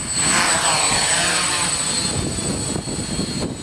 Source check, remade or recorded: recorded